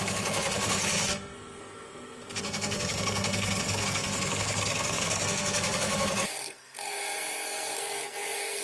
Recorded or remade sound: remade